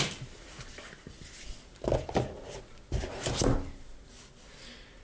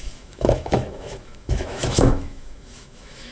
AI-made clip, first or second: second